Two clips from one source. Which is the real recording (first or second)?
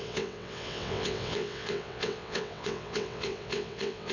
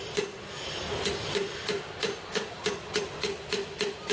second